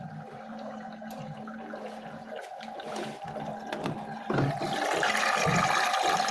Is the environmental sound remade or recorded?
recorded